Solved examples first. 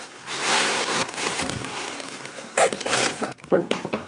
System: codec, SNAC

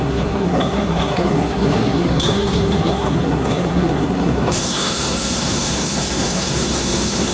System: codec, SNAC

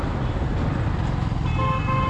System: none